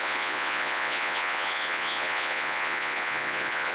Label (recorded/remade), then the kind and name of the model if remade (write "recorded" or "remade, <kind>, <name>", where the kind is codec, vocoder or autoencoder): remade, vocoder, Vocos